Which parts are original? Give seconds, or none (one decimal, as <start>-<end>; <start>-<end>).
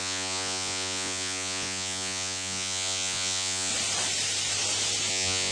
3.7-5.1